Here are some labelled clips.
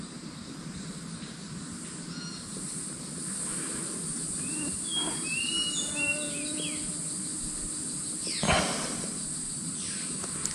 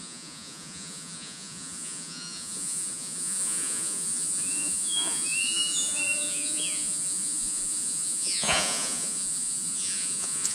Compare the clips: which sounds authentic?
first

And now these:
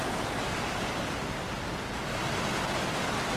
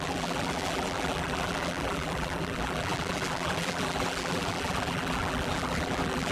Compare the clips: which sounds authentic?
first